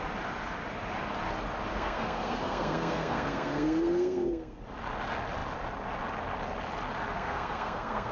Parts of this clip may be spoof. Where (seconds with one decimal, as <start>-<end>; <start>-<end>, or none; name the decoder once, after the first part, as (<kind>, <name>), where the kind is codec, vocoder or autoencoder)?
1.7-4.6 (codec, SNAC); 7.1-8.1